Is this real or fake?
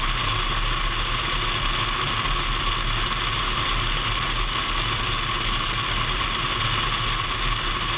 real